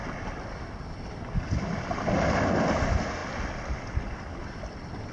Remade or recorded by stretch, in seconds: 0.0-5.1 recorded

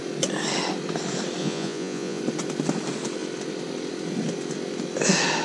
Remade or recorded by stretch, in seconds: 0.0-1.4 recorded; 1.4-2.2 remade; 2.2-5.4 recorded

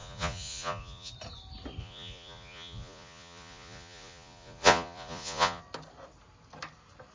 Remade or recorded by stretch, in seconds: 0.0-1.1 remade; 1.1-1.8 recorded; 1.8-5.6 remade; 5.6-7.1 recorded

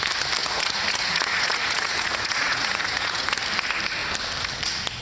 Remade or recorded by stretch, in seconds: 0.0-0.4 recorded; 0.4-3.3 remade; 3.3-5.0 recorded

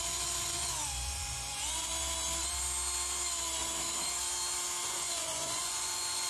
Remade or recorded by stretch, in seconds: 0.0-1.9 remade; 1.9-4.9 recorded; 4.9-6.3 remade

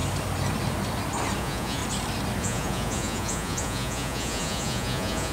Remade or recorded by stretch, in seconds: 0.0-1.4 recorded; 1.4-1.8 remade; 1.8-2.4 recorded; 2.4-5.3 remade